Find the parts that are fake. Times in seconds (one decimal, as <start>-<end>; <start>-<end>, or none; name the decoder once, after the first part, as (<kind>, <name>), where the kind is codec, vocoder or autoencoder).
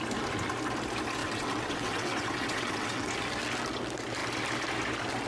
1.2-3.1 (vocoder, WaveNeXt)